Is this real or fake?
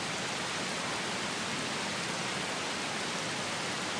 real